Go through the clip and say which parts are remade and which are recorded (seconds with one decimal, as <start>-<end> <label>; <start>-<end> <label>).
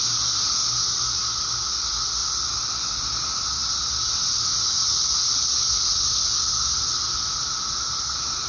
0.0-8.5 recorded